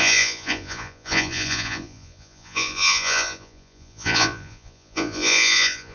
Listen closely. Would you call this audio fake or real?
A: fake